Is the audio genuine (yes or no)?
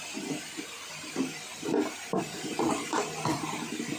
yes